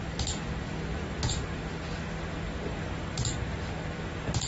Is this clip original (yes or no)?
yes